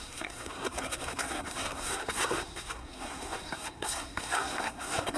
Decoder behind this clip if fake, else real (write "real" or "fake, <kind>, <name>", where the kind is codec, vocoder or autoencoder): fake, codec, SNAC